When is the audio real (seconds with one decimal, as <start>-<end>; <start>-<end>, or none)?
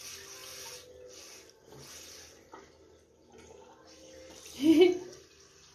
0.0-5.7